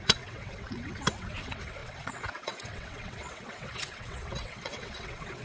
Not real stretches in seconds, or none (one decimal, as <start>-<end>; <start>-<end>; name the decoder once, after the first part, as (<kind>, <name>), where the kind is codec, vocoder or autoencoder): 0.0-5.4 (vocoder, WaveNeXt)